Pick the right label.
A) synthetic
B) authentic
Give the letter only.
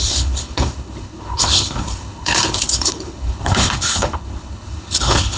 A